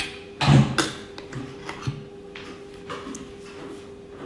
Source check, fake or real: real